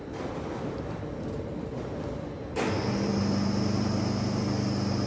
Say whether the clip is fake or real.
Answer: real